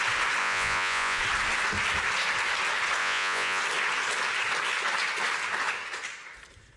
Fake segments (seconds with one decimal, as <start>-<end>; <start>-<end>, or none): 0.4-1.2; 3.0-3.6